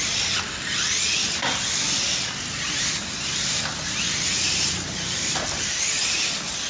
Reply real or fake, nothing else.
real